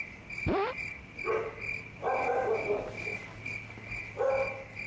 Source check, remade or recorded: recorded